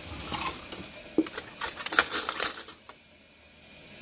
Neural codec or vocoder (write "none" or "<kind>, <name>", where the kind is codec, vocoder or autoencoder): none